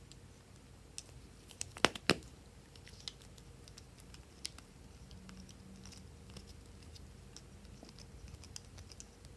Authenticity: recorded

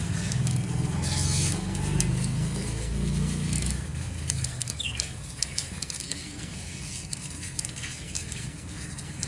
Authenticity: remade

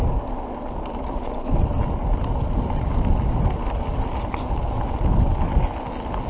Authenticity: recorded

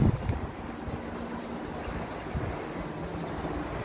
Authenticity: recorded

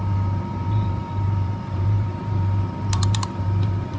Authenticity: remade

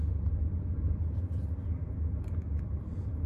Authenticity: remade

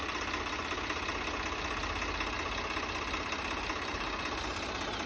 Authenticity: recorded